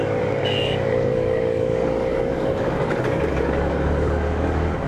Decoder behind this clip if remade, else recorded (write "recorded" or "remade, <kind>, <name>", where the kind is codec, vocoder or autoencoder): remade, codec, DAC